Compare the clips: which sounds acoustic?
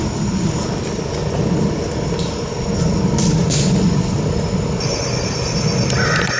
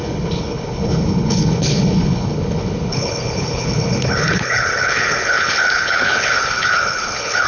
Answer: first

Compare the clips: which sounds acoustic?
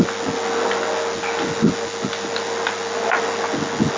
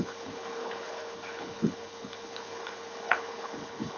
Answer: first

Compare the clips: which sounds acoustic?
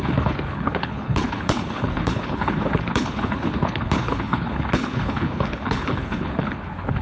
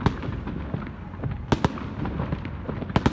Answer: second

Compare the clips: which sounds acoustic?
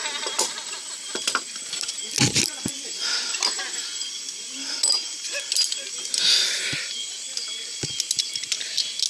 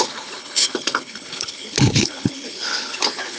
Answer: first